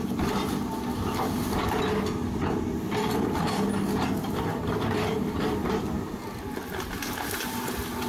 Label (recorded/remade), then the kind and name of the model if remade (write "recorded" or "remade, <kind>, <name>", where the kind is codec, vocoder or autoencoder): recorded